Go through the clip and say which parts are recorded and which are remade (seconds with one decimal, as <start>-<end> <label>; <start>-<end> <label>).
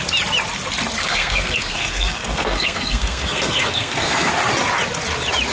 0.0-1.0 recorded; 1.0-4.3 remade; 4.3-5.5 recorded